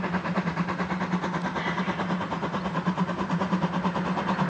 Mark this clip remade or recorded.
recorded